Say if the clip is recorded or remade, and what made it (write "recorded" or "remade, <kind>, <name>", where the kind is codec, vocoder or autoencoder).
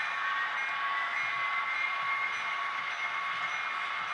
recorded